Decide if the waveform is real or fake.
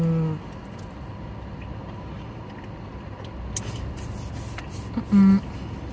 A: real